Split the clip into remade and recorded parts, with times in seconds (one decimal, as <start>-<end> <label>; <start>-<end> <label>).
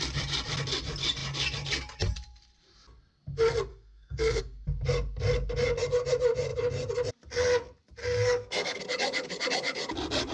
0.0-3.7 recorded; 3.7-4.4 remade; 4.4-8.0 recorded; 8.0-8.8 remade; 8.8-10.3 recorded